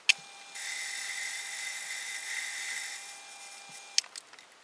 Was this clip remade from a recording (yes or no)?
no